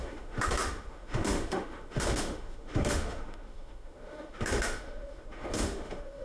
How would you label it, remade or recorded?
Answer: remade